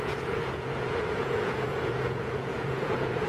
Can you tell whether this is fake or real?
fake